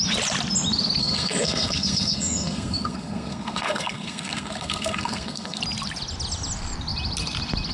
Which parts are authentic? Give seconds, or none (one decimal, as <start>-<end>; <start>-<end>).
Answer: 0.0-1.0; 5.6-7.7